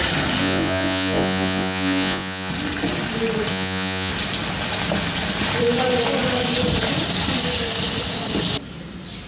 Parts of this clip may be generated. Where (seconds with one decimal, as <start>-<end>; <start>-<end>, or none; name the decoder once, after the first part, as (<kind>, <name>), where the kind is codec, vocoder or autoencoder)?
0.4-2.5 (vocoder, Vocos); 3.5-4.1